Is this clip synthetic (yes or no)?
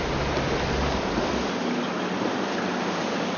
no